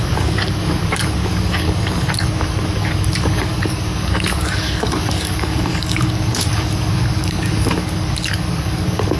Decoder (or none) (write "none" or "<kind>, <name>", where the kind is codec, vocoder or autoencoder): codec, DAC